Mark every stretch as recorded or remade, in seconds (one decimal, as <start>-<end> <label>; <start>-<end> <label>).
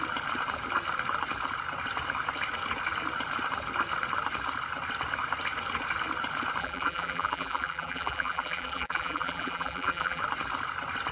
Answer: 0.0-6.6 recorded; 6.6-10.2 remade; 10.2-11.1 recorded